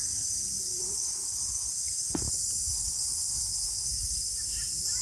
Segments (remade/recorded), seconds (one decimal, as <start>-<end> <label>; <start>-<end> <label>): 0.0-0.8 recorded; 0.8-1.7 remade; 1.7-2.7 recorded; 2.7-3.9 remade; 3.9-5.0 recorded